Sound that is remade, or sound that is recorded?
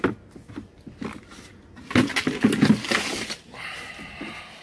recorded